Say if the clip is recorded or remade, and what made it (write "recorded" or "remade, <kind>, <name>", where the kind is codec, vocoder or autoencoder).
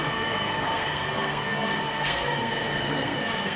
remade, codec, SNAC